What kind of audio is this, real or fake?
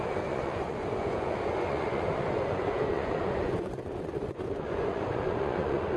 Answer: fake